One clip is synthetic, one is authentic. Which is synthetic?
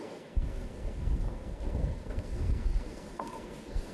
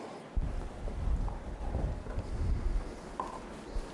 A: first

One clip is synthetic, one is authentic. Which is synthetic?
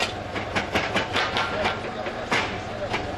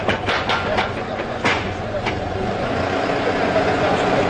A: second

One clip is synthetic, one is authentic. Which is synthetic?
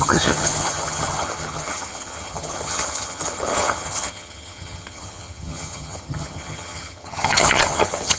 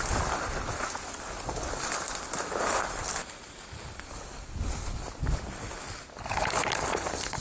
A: first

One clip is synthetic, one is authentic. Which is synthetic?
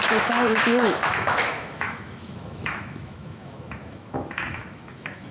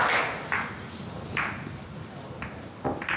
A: first